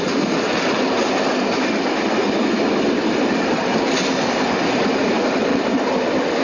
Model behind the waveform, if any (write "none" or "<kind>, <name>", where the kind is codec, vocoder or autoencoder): none